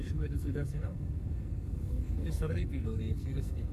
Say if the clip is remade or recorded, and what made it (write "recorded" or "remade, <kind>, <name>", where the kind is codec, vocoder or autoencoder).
remade, codec, SNAC